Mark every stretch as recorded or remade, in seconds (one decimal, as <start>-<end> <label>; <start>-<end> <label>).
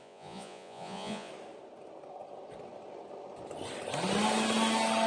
0.0-1.3 remade; 1.3-5.1 recorded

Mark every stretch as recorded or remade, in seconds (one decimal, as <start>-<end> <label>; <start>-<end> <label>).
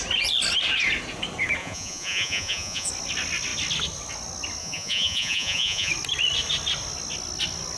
0.0-1.6 recorded; 1.6-2.9 remade; 2.9-4.6 recorded; 4.6-5.9 remade; 5.9-7.8 recorded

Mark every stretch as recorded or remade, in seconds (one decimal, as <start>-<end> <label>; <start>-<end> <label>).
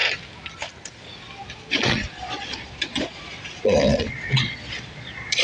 0.0-1.7 recorded; 1.7-5.4 remade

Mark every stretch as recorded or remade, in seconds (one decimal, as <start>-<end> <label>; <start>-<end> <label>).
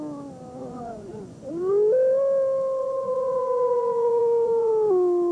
0.0-0.6 recorded; 0.6-1.7 remade; 1.7-2.8 recorded; 2.8-4.7 remade; 4.7-5.3 recorded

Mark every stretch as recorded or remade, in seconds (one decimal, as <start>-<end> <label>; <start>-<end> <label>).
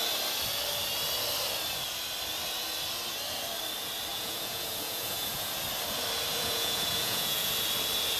0.0-4.1 recorded; 4.1-5.5 remade; 5.5-6.3 recorded; 6.3-7.5 remade; 7.5-8.2 recorded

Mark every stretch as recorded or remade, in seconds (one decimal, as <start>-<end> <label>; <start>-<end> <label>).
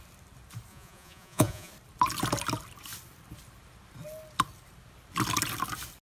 0.0-0.7 recorded; 0.7-1.7 remade; 1.7-6.1 recorded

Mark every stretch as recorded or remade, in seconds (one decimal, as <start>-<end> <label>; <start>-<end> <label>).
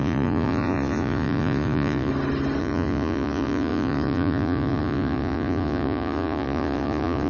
0.0-2.1 remade; 2.1-2.6 recorded; 2.6-7.3 remade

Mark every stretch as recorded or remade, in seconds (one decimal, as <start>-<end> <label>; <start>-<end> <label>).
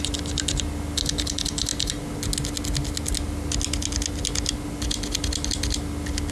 0.0-6.3 recorded